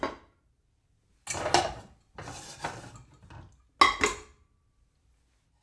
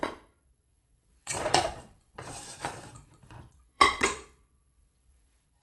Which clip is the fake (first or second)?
second